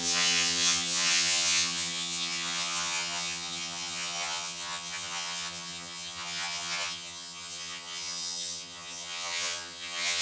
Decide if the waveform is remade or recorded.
remade